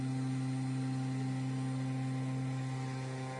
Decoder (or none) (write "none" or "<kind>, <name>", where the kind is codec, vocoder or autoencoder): none